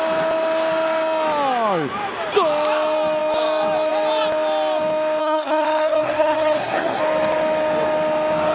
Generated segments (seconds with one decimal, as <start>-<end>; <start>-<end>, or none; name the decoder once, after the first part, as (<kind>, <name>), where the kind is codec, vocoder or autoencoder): 5.2-7.0 (codec, SNAC)